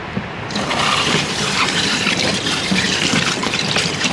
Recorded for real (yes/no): no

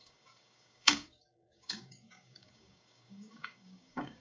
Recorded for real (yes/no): no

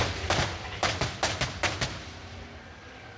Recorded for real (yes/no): yes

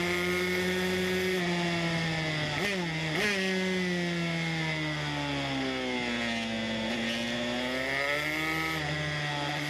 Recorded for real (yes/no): yes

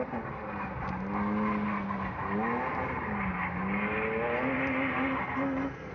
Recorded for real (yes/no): yes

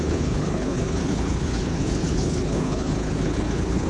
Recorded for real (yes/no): no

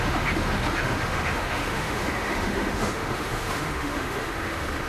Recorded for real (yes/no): no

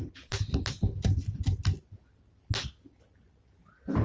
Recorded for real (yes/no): yes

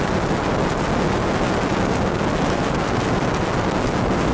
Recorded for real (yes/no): yes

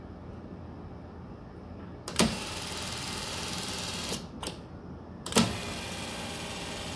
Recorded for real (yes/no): yes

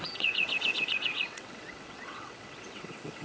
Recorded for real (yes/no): no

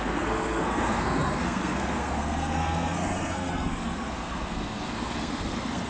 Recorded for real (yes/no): no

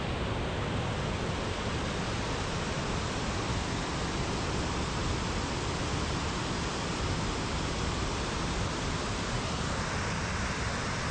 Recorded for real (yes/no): yes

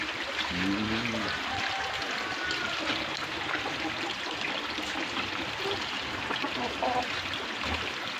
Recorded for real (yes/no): yes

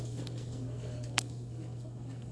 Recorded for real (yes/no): no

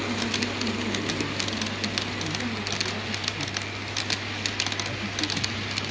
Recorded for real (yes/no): yes